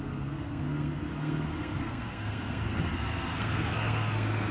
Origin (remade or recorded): remade